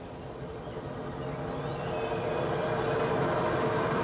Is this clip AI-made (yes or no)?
no